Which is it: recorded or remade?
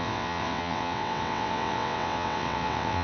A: remade